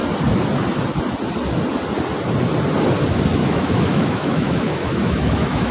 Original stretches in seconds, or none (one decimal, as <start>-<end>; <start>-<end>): 0.0-3.4